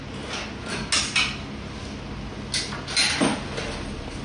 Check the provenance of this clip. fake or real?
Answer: real